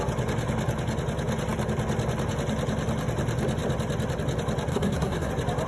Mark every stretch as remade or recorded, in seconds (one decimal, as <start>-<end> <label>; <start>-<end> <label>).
0.0-4.7 recorded; 4.7-5.3 remade; 5.3-5.7 recorded